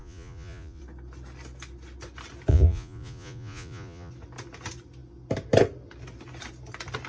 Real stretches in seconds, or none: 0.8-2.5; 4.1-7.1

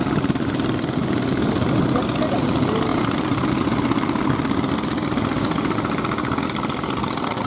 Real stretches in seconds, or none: 0.0-7.5

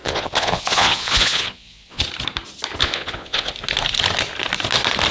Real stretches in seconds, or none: 2.0-2.8; 3.5-5.1